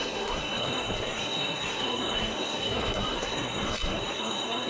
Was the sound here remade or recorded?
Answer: remade